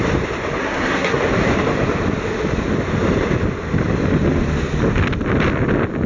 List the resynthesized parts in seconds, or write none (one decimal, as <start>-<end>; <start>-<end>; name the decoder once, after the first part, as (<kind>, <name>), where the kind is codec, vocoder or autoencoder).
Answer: 0.6-1.2 (codec, SNAC)